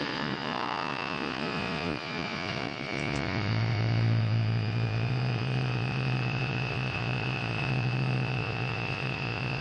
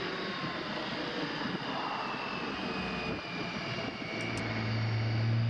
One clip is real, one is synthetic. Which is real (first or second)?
second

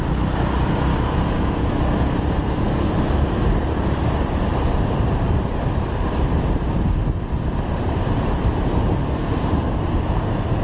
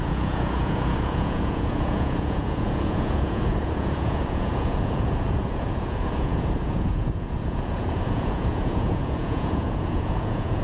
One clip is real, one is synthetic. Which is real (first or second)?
first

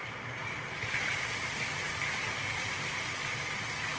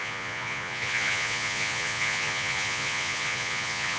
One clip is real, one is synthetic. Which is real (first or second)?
first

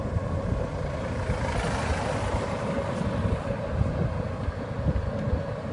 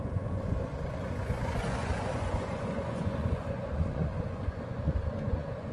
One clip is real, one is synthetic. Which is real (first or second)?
first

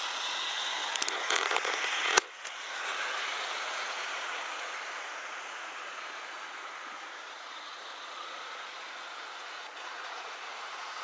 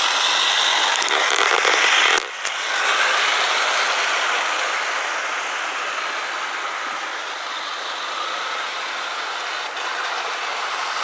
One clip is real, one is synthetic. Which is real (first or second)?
second